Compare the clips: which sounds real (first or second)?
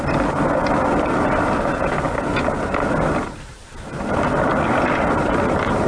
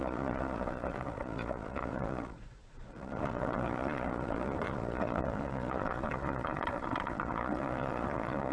first